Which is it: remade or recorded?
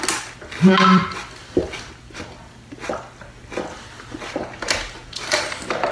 recorded